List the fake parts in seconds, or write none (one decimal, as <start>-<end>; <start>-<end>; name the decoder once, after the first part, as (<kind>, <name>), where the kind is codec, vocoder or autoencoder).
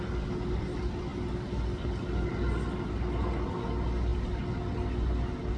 none